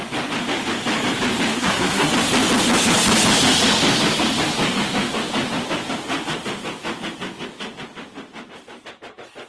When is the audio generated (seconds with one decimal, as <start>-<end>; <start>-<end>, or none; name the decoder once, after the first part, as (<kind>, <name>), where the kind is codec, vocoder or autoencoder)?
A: 1.5-2.1 (codec, SNAC)